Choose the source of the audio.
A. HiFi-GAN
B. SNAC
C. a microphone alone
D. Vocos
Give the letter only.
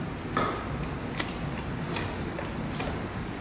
C